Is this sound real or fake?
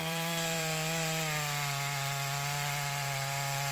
fake